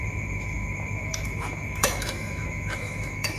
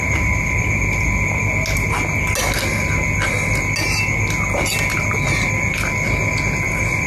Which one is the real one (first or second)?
second